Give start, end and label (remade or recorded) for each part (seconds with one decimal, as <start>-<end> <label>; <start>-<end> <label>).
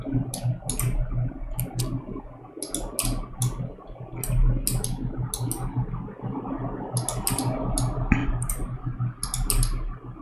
0.0-8.2 recorded; 8.2-8.8 remade; 8.8-10.2 recorded